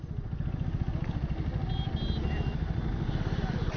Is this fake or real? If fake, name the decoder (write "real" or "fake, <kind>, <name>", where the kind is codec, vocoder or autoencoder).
real